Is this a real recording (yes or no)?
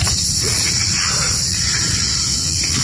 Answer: no